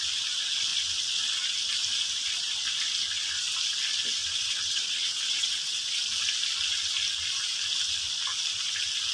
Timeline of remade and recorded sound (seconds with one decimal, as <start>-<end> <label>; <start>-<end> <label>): 0.0-4.2 recorded; 4.2-6.0 remade; 6.0-9.1 recorded